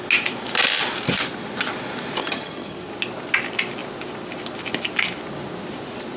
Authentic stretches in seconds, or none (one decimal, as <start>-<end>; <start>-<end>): 0.0-2.2; 2.9-6.2